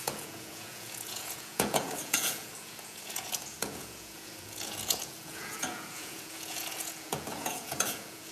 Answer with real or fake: fake